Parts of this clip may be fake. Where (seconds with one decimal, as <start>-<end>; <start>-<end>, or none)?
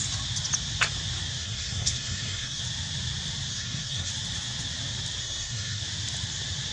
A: 1.4-2.6; 3.5-4.1; 5.2-5.8